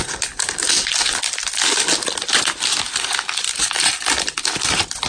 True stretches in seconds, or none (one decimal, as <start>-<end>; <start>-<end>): 0.0-5.1